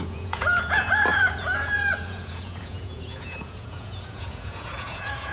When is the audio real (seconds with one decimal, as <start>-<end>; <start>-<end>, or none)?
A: none